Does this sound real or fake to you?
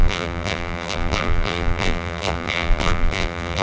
fake